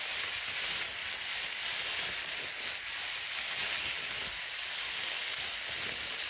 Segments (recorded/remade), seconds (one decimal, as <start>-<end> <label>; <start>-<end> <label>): 0.0-6.3 recorded